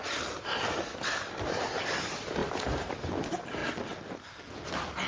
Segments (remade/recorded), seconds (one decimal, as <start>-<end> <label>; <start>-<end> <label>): 0.0-5.1 recorded